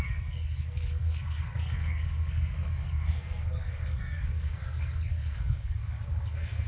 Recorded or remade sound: remade